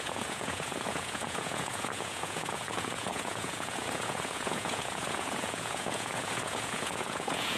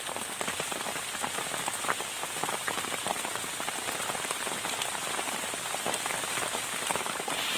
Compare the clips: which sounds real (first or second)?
second